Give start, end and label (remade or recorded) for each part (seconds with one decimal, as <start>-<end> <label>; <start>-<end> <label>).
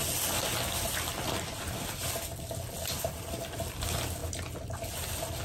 0.0-5.4 recorded